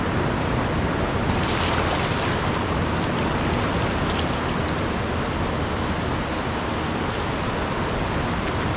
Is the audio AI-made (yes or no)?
no